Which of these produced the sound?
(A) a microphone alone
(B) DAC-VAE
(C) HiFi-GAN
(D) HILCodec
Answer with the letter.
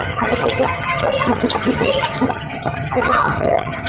C